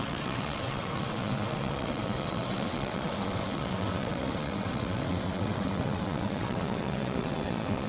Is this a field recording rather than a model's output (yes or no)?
no